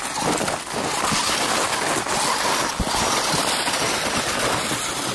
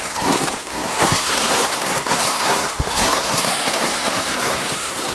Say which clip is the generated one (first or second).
second